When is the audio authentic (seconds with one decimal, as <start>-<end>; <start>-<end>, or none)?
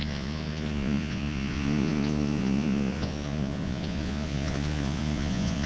none